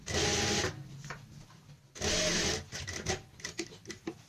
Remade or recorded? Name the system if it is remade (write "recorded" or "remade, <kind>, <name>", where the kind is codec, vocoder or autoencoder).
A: recorded